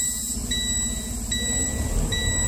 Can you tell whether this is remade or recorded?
recorded